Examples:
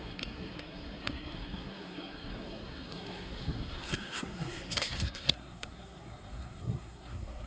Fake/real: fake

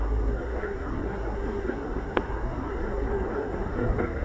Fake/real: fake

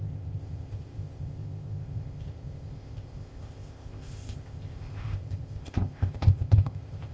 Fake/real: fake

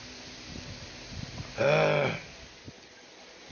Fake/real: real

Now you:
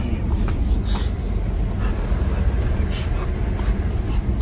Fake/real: real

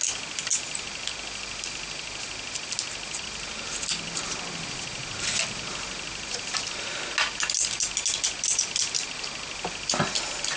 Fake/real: real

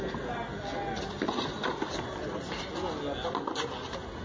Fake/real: real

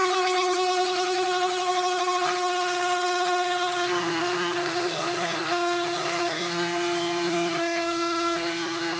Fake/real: fake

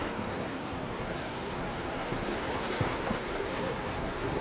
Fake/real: fake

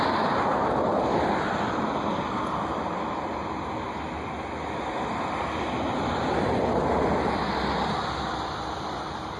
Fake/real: fake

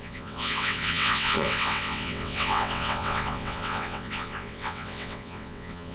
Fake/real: fake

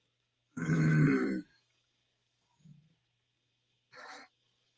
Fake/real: fake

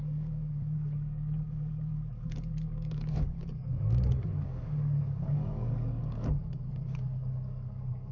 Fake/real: fake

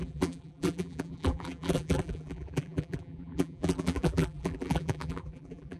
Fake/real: fake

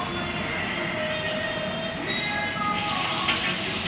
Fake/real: real